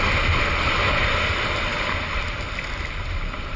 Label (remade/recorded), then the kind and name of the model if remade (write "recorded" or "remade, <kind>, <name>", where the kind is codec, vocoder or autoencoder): recorded